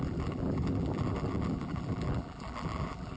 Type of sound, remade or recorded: remade